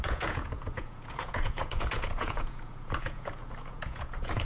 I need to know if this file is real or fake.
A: fake